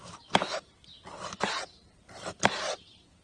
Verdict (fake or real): real